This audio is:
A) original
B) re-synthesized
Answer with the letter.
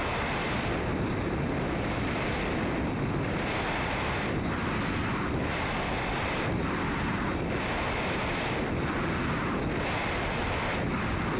A